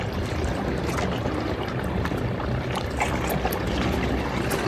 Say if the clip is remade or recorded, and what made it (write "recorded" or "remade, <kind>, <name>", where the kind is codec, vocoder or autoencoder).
recorded